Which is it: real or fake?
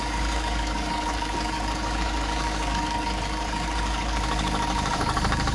fake